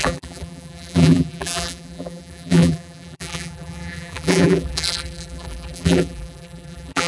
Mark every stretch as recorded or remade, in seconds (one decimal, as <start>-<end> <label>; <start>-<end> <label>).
0.0-7.1 remade